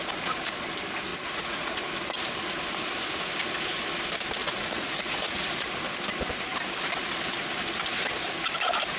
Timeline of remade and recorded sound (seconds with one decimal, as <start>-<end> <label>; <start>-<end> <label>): 0.0-1.1 recorded; 1.1-1.7 remade; 1.7-4.4 recorded; 4.4-5.7 remade; 5.7-9.0 recorded